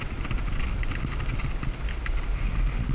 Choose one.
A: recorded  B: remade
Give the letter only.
A